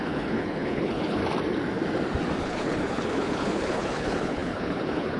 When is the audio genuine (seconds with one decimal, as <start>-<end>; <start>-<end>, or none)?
1.2-2.4